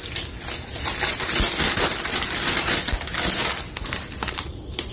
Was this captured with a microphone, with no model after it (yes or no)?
yes